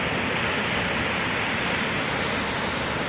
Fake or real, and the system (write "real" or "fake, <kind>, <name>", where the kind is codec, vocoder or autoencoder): real